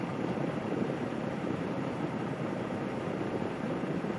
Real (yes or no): no